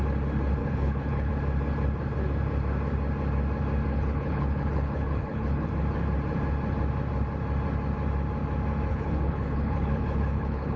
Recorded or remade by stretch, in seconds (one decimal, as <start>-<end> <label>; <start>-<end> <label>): 0.0-0.6 recorded; 0.6-1.3 remade; 1.3-3.9 recorded; 3.9-5.7 remade; 5.7-8.9 recorded; 8.9-10.8 remade